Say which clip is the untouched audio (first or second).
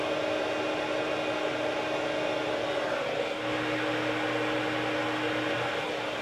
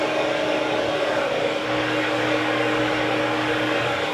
first